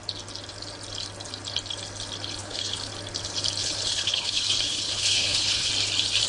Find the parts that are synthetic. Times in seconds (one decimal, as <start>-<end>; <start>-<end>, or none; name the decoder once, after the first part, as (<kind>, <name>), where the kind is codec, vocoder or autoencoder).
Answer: 2.4-2.9 (codec, HILCodec); 3.6-5.7